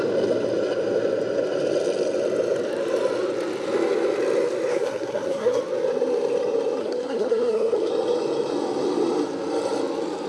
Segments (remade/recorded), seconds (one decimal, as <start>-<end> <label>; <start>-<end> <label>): 0.0-4.7 recorded; 4.7-5.6 remade; 5.6-6.8 recorded; 6.8-7.9 remade; 7.9-10.3 recorded